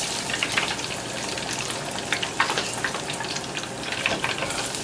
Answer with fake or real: real